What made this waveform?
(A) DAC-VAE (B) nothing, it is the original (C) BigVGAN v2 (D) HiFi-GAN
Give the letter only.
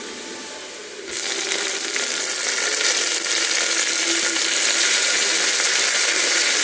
B